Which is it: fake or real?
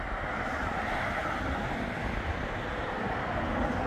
real